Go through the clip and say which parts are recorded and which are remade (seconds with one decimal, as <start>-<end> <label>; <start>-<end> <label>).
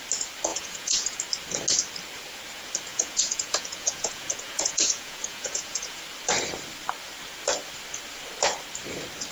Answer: 0.0-0.5 recorded; 0.5-1.2 remade; 1.2-2.9 recorded; 2.9-6.0 remade; 6.0-9.3 recorded